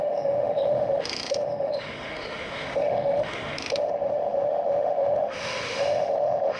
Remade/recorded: remade